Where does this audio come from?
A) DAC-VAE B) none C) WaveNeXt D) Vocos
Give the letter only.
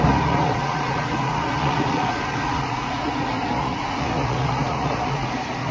D